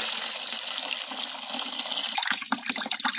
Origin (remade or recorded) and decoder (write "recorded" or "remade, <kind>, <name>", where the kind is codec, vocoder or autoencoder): recorded